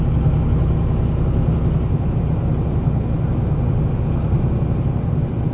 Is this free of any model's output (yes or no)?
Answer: yes